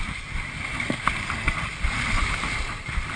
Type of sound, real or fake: real